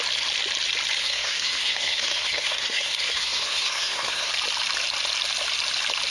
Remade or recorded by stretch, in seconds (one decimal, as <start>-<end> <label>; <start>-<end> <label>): 0.0-1.0 recorded; 1.0-4.3 remade; 4.3-6.1 recorded